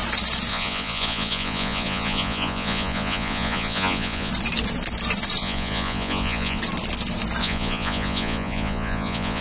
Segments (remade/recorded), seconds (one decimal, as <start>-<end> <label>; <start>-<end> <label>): 0.0-0.5 recorded; 0.5-4.3 remade; 4.3-5.4 recorded; 5.4-6.6 remade; 6.6-7.4 recorded; 7.4-9.4 remade